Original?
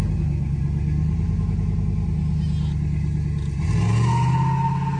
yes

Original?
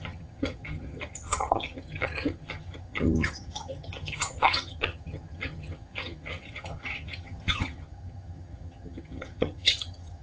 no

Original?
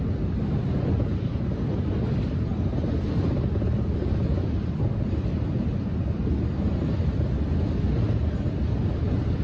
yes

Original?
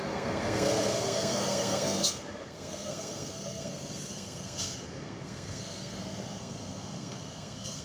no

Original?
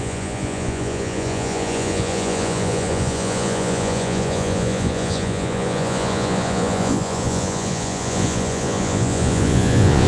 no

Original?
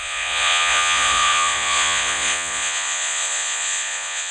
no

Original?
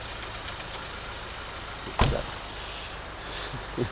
yes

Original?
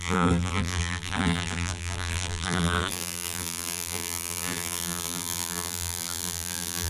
no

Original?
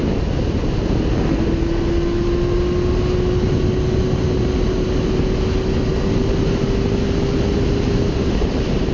yes